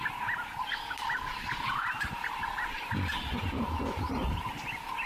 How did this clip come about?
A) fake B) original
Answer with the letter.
B